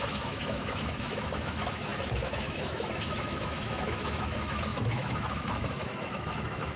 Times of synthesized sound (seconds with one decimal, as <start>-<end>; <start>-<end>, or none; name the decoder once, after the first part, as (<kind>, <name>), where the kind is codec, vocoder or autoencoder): 0.0-6.8 (autoencoder, DAC-VAE)